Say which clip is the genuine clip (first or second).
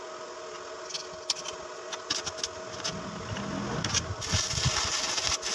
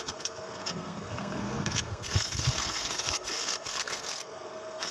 first